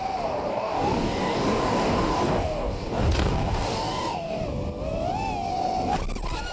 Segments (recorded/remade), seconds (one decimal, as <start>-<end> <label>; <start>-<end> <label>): 0.0-0.5 recorded; 0.5-4.4 remade; 4.4-6.5 recorded